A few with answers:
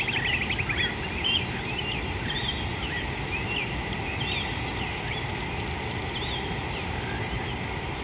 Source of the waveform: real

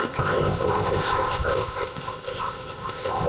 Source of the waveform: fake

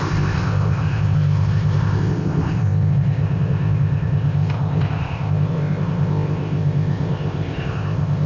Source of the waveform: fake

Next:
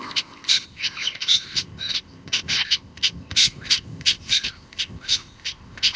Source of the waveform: fake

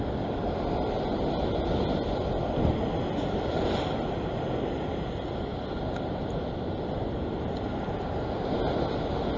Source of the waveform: real